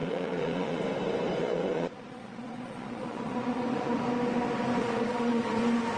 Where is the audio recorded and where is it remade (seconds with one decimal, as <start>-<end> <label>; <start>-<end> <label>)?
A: 0.0-0.8 remade; 0.8-1.4 recorded; 1.4-4.0 remade; 4.0-4.8 recorded; 4.8-5.6 remade; 5.6-6.0 recorded